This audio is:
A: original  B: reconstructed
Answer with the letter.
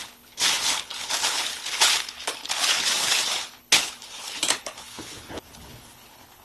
B